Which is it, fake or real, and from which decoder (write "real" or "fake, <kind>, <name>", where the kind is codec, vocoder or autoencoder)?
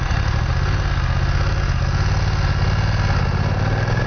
real